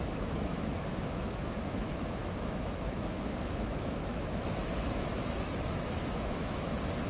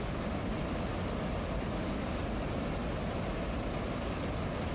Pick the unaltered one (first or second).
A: second